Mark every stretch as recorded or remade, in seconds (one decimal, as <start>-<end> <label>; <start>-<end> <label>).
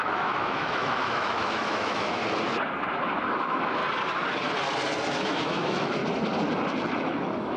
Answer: 0.0-2.2 remade; 2.2-3.4 recorded; 3.4-3.8 remade; 3.8-5.1 recorded; 5.1-6.0 remade; 6.0-7.0 recorded; 7.0-7.6 remade